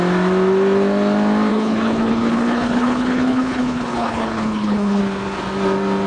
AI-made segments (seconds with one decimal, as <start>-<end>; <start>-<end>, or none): 1.5-5.0